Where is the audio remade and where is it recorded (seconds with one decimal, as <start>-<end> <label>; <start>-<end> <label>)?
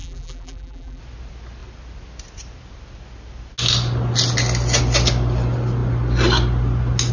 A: 0.0-1.0 remade; 1.0-7.1 recorded